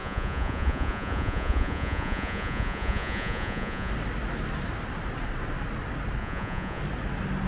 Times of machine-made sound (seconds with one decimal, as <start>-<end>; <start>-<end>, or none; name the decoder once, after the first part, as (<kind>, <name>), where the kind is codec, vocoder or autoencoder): 0.0-3.9 (vocoder, Vocos); 6.2-6.8